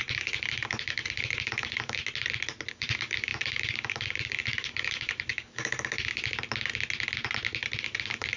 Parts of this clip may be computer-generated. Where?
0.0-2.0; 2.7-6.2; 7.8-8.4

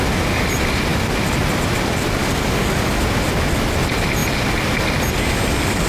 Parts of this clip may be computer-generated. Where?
2.2-3.0

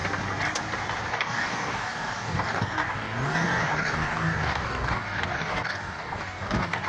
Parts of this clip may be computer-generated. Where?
1.1-6.9

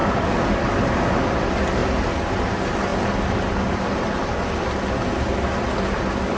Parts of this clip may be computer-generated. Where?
0.0-0.6